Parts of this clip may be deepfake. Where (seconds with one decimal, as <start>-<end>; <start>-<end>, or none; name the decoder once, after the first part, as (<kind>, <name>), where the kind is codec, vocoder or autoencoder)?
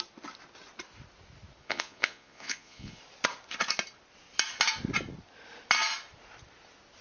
1.6-3.0 (vocoder, Vocos)